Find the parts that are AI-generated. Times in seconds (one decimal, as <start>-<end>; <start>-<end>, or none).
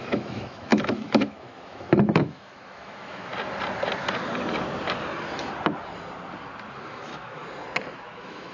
0.0-3.3; 6.9-7.4; 8.1-8.5